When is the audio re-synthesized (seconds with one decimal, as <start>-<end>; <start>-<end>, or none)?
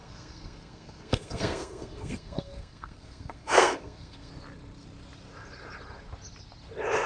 0.0-4.3